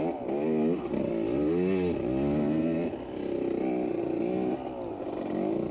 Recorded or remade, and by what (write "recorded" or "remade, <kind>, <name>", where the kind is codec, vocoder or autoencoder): recorded